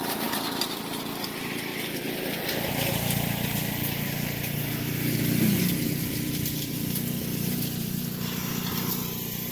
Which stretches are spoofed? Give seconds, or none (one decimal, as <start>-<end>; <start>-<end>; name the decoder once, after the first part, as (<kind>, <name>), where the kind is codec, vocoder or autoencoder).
0.0-1.7 (vocoder, BigVGAN v2); 2.9-9.5